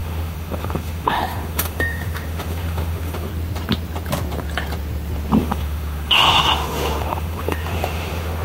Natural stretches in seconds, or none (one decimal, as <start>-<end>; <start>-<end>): 3.3-5.4